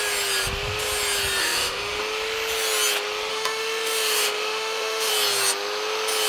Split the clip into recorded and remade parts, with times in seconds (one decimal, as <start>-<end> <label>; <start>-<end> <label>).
0.0-1.4 recorded; 1.4-2.0 remade; 2.0-3.3 recorded; 3.3-5.1 remade; 5.1-6.3 recorded